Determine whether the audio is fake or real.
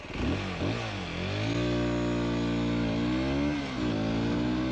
real